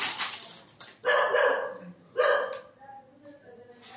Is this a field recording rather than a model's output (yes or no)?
yes